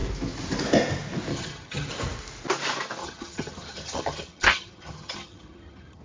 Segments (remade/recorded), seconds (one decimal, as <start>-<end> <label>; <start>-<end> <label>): 0.0-1.3 recorded; 1.3-1.9 remade; 1.9-3.0 recorded; 3.0-6.0 remade